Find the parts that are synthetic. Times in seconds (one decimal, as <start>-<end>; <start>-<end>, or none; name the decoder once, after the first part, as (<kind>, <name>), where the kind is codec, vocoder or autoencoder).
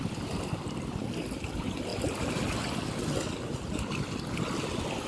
none